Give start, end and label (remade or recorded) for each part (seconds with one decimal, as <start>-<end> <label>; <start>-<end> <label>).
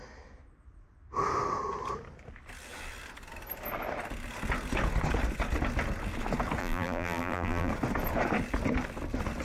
0.0-6.6 recorded; 6.6-7.7 remade; 7.7-9.4 recorded